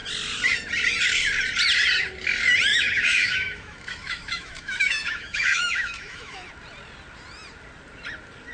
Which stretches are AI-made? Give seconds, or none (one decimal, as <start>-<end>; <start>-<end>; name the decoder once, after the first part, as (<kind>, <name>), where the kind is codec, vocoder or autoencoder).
2.7-6.5 (autoencoder, DAC-VAE)